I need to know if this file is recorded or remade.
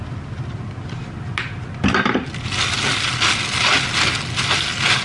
recorded